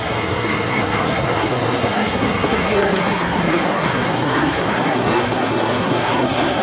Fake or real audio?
fake